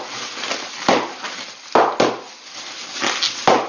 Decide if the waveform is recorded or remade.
recorded